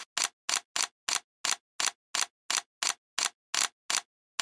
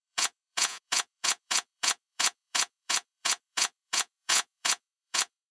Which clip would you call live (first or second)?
first